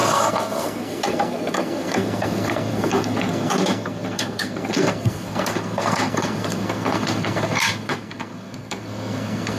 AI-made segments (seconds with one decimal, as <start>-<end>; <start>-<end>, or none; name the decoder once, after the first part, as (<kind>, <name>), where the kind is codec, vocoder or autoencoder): 0.0-9.6 (codec, SNAC)